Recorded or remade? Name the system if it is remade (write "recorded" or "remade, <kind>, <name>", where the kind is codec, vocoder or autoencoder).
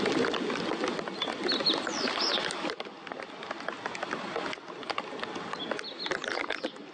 recorded